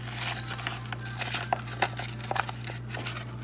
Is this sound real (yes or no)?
yes